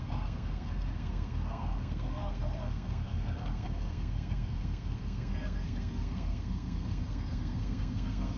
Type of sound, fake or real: fake